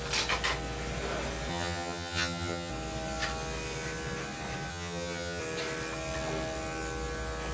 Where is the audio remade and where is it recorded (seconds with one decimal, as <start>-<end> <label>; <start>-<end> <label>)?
0.0-1.5 recorded; 1.5-2.7 remade; 2.7-4.7 recorded; 4.7-5.4 remade; 5.4-7.5 recorded